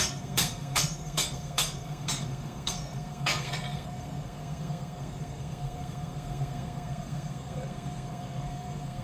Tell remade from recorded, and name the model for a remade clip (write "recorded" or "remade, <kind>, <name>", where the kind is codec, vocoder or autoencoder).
remade, codec, SNAC